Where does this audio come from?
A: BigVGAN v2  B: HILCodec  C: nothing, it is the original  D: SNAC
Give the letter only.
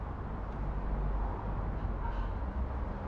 C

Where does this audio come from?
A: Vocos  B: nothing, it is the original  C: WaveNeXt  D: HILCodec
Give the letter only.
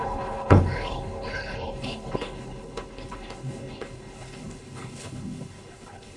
D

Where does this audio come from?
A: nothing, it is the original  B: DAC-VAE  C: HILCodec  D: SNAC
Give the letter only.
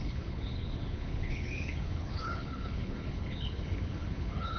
C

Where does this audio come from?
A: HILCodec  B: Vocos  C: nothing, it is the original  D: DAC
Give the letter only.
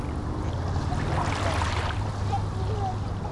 C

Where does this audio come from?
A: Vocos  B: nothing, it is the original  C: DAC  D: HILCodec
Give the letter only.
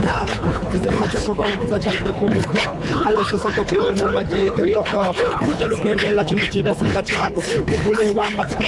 D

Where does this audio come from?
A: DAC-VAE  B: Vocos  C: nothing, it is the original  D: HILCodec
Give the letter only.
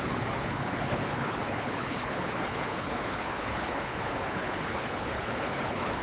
D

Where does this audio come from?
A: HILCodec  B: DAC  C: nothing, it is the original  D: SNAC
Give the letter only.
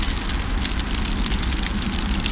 C